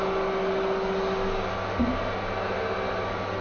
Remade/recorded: recorded